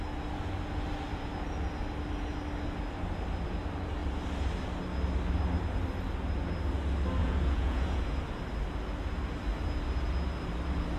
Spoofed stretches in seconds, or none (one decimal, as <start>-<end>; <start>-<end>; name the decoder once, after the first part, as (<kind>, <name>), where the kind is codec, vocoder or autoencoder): 7.2-8.0 (vocoder, Vocos)